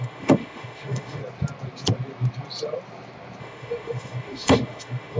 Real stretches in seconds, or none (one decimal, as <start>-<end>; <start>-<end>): 1.2-3.4